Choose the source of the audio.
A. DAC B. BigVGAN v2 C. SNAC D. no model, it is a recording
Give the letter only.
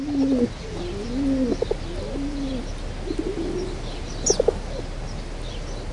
D